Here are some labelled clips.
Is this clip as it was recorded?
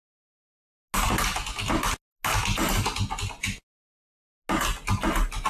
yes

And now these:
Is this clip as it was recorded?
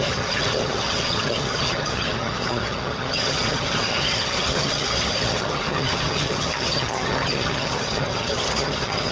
no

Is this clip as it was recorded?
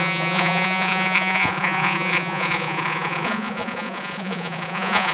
no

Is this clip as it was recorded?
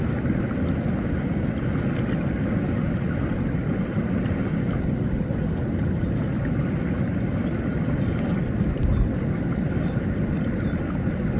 yes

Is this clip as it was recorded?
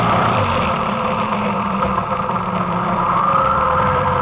no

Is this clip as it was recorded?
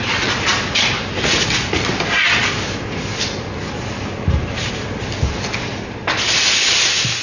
yes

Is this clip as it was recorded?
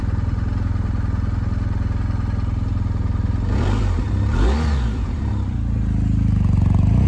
yes